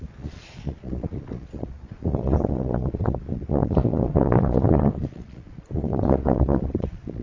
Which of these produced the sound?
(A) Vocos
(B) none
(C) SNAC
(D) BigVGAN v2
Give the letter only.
A